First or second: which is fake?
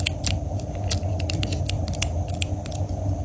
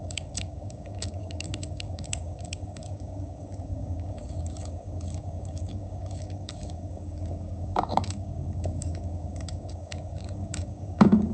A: second